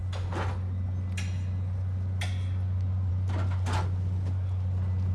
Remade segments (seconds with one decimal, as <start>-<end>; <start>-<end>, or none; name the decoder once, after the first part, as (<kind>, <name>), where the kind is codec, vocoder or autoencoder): none